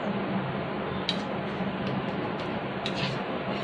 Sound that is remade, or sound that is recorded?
recorded